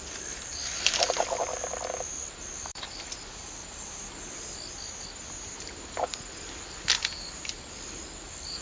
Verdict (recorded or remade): recorded